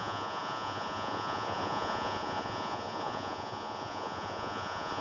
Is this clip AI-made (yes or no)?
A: yes